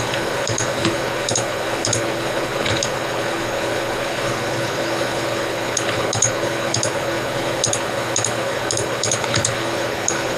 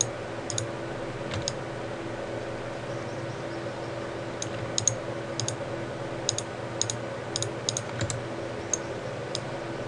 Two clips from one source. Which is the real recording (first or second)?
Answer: second